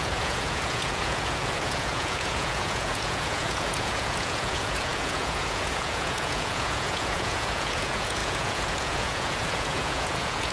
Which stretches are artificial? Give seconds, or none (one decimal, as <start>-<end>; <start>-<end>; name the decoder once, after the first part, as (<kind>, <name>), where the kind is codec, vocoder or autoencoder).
0.0-10.5 (vocoder, Vocos)

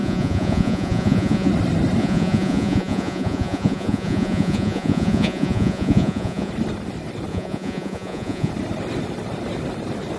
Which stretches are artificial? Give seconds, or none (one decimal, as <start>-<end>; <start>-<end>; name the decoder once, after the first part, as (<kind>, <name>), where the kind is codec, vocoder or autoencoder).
0.0-1.5 (vocoder, Vocos); 2.0-6.5; 7.3-8.5